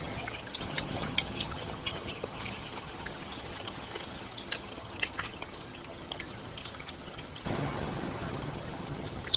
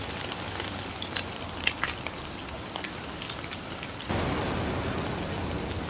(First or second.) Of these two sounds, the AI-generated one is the first